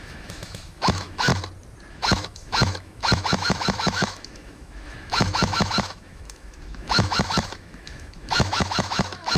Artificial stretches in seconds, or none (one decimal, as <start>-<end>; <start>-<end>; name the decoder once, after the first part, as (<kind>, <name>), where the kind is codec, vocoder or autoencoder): 0.0-1.3 (autoencoder, DAC-VAE); 1.9-9.4